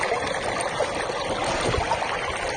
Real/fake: real